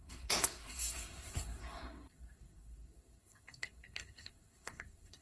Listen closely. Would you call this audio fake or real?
fake